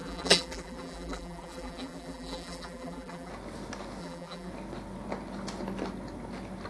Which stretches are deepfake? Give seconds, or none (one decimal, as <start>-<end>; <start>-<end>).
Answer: 0.0-3.3; 4.0-4.5